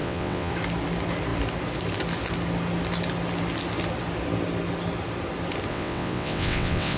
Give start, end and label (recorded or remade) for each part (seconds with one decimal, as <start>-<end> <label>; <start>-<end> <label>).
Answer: 0.0-0.5 remade; 0.5-5.7 recorded; 5.7-7.0 remade